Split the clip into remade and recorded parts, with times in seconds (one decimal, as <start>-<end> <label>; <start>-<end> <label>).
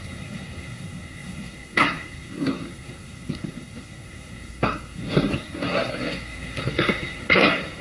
0.0-7.8 remade